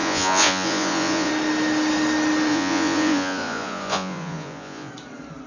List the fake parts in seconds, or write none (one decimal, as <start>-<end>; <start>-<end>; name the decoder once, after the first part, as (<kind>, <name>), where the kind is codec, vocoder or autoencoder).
0.0-1.3 (vocoder, Vocos); 2.5-4.9